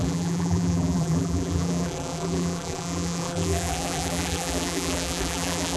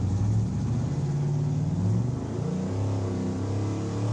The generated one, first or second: first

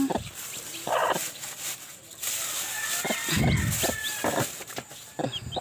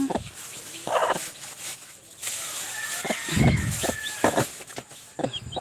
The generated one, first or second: second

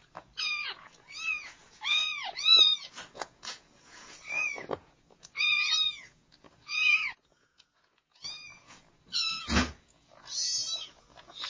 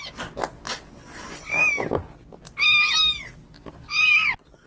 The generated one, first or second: first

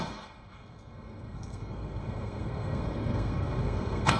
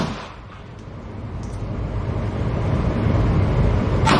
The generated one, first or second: first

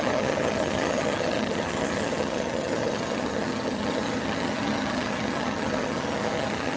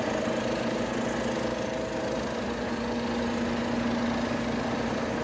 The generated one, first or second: first